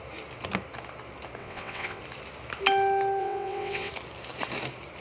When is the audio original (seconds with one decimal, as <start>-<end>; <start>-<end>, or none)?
0.0-1.4; 2.0-3.2; 3.9-5.0